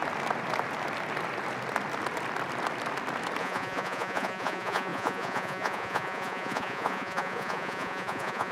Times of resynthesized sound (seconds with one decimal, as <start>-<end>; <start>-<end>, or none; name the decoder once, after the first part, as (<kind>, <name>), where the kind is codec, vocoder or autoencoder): 3.4-8.5 (vocoder, Vocos)